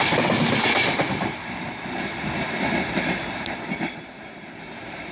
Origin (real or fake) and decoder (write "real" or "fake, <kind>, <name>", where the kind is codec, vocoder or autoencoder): real